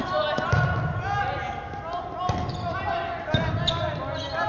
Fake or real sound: real